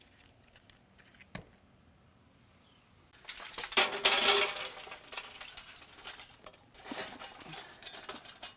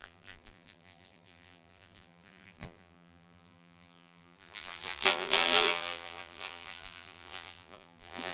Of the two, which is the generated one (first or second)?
second